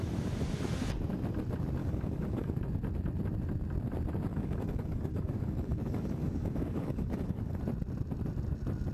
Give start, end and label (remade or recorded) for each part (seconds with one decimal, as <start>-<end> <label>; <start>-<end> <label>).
0.0-1.8 recorded; 1.8-2.6 remade; 2.6-4.3 recorded; 4.3-7.6 remade; 7.6-8.9 recorded